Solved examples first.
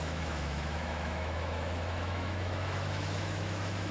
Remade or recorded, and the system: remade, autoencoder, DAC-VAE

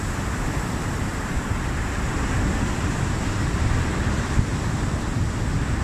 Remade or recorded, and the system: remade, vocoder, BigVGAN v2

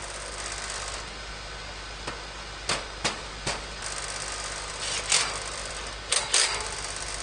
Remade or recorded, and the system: recorded